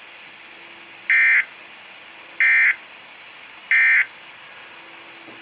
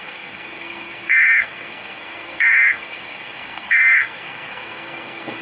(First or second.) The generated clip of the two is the second